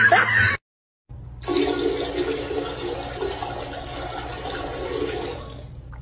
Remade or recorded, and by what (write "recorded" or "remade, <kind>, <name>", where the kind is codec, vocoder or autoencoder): recorded